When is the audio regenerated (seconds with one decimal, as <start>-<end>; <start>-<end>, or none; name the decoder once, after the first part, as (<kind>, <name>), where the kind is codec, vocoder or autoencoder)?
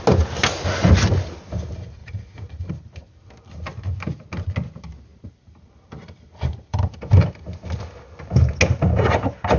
2.0-2.7 (vocoder, BigVGAN v2); 5.1-7.3